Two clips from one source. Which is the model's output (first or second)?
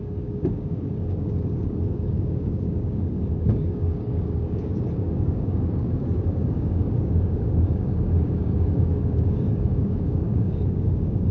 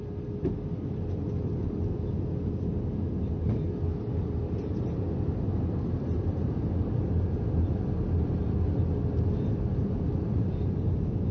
first